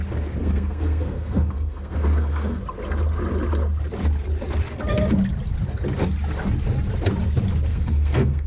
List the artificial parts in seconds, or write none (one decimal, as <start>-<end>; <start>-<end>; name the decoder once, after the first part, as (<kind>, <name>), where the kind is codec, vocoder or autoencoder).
0.4-2.6 (codec, SNAC); 7.7-8.5

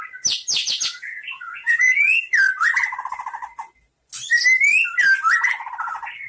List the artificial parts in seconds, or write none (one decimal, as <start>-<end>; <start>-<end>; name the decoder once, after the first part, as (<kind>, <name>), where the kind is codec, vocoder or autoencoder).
0.6-2.2 (vocoder, Vocos)

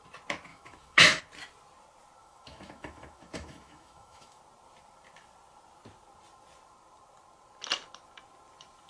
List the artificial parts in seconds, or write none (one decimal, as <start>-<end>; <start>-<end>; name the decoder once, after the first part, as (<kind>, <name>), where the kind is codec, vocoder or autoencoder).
0.5-1.2 (autoencoder, DAC-VAE); 2.2-4.4

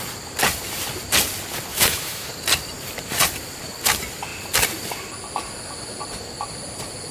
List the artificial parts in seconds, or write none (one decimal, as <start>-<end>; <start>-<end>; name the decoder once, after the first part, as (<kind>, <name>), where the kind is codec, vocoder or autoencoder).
1.7-2.3 (autoencoder, DAC-VAE)

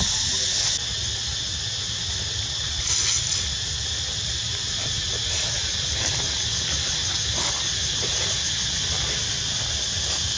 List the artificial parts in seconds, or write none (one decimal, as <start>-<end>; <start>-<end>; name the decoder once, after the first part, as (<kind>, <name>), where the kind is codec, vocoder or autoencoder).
3.6-5.0 (vocoder, BigVGAN v2)

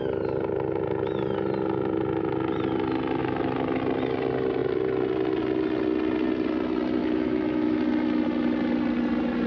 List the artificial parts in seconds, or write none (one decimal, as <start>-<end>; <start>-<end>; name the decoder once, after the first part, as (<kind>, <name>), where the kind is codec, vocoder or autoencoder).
3.2-3.8 (autoencoder, DAC-VAE); 7.0-7.8